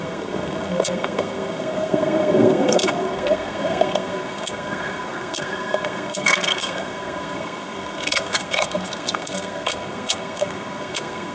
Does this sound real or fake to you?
fake